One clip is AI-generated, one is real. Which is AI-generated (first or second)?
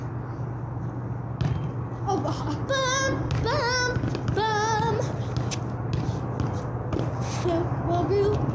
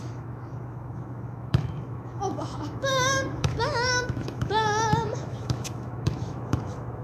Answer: second